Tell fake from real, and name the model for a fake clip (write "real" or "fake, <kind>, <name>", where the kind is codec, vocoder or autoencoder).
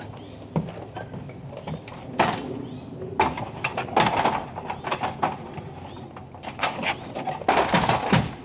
real